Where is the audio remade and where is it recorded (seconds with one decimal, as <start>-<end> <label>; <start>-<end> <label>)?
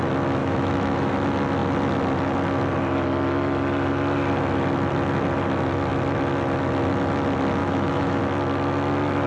0.0-0.4 recorded; 0.4-1.1 remade; 1.1-7.6 recorded; 7.6-8.2 remade; 8.2-9.3 recorded